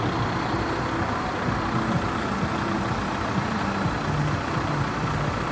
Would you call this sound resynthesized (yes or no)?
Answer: no